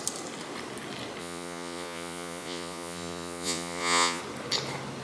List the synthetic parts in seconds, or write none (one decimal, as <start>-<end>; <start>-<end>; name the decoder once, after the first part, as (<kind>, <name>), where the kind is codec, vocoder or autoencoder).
1.2-4.2 (vocoder, Vocos)